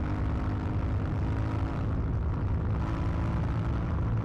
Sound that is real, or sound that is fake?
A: real